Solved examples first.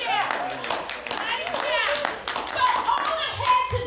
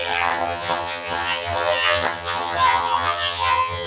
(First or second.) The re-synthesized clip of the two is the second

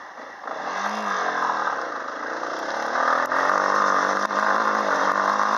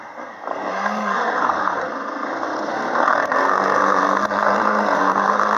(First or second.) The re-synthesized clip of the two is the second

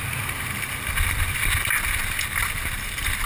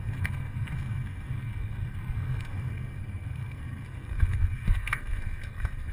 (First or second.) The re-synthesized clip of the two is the second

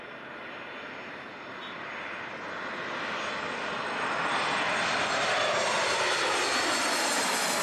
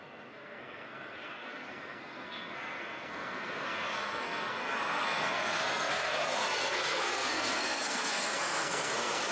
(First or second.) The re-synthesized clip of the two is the second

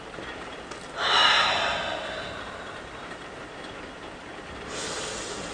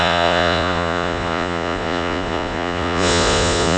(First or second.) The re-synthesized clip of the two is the second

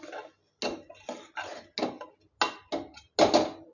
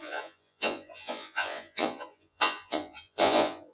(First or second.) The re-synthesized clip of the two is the second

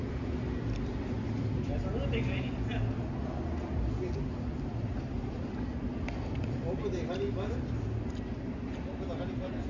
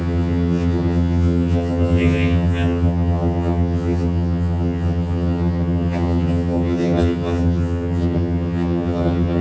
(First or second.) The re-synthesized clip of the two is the second